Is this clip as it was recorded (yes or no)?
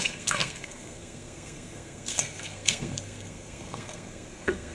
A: no